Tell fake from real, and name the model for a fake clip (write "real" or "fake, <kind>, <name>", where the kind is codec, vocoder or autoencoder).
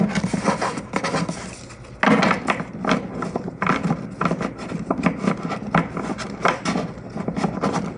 real